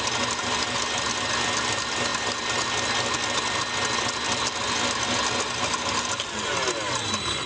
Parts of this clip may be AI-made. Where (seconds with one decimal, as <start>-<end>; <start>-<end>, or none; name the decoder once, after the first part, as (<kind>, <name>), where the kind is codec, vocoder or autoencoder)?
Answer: none